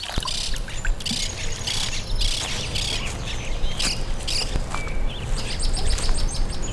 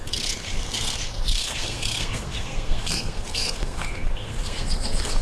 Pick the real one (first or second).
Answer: first